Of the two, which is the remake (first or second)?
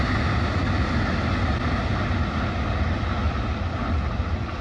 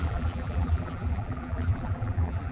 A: second